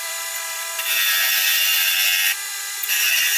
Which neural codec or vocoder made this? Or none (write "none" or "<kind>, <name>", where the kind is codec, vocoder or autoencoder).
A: vocoder, BigVGAN v2